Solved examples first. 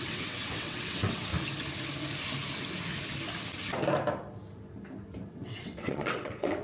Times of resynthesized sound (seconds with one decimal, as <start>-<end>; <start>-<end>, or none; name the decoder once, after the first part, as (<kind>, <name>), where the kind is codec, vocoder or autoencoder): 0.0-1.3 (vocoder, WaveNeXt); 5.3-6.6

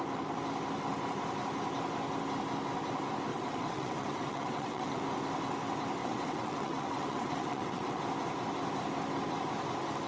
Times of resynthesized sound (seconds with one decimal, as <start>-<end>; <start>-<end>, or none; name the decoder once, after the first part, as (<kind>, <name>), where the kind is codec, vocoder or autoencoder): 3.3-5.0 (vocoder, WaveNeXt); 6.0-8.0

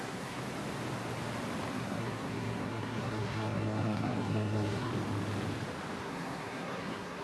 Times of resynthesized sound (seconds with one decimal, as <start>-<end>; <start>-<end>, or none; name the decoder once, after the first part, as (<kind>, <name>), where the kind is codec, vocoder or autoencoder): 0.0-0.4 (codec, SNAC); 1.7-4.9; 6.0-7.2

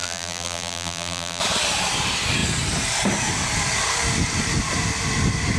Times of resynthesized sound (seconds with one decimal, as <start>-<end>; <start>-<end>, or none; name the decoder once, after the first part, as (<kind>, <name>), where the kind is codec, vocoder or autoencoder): 0.0-1.4 (vocoder, BigVGAN v2)

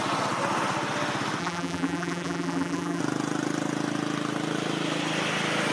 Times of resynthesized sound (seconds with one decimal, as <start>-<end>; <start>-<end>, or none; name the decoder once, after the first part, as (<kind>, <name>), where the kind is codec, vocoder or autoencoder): 1.4-3.0 (vocoder, BigVGAN v2)

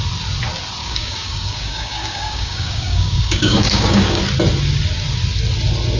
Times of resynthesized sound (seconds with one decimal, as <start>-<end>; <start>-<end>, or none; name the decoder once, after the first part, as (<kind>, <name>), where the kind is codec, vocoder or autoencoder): 0.8-4.2 (codec, DAC)